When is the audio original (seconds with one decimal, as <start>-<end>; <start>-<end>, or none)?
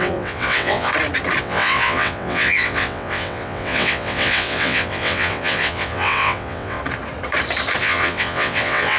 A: 0.9-1.4; 6.8-7.8